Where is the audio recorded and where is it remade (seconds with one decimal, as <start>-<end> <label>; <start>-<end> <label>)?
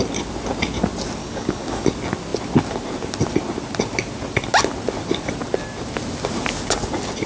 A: 0.0-1.2 recorded; 1.2-1.9 remade; 1.9-7.3 recorded